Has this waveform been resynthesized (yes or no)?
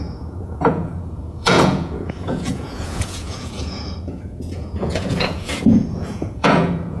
yes